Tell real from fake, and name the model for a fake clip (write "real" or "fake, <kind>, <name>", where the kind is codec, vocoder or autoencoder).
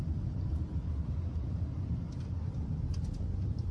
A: real